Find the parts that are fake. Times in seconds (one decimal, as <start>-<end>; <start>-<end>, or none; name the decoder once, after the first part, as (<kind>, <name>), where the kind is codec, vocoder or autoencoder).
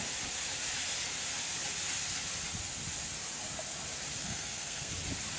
4.2-4.9 (codec, SNAC)